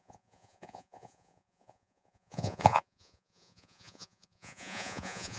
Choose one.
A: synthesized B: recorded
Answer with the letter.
A